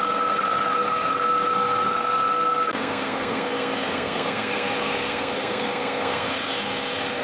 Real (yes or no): no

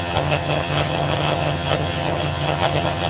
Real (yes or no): no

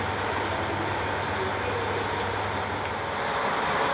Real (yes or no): yes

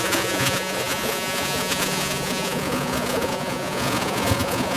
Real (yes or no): no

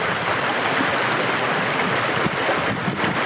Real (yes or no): yes